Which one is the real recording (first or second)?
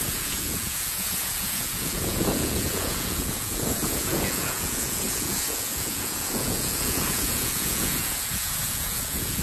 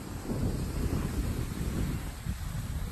second